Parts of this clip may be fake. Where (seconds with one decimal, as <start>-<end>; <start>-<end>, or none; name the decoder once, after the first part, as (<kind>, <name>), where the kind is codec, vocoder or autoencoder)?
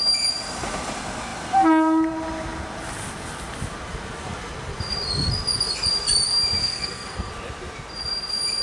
6.6-7.3 (codec, SNAC)